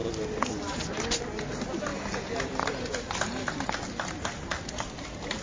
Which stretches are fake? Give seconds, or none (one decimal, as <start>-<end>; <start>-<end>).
none

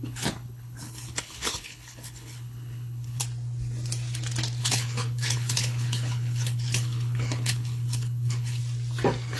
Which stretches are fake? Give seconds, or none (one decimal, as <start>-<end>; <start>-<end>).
0.0-3.2; 4.6-8.6

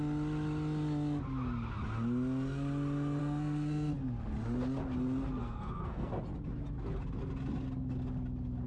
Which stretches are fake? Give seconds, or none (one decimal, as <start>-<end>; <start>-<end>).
3.2-3.9; 5.4-6.1

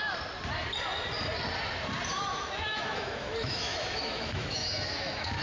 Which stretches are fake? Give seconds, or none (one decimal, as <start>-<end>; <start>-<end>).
2.1-5.4

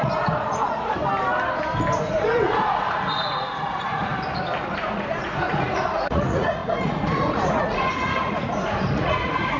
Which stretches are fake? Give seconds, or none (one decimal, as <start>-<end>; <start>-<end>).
0.0-1.0; 2.0-4.1; 4.9-9.6

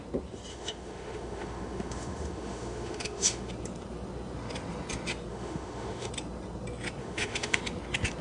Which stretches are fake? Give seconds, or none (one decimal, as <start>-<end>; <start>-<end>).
0.5-3.5; 5.3-6.1; 7.0-7.6